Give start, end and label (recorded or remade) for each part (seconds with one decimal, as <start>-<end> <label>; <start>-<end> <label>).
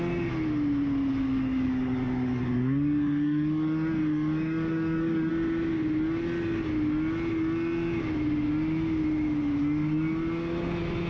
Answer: 0.0-1.1 recorded; 1.1-5.3 remade; 5.3-11.1 recorded